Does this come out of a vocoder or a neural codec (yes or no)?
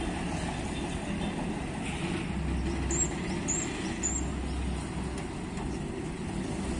no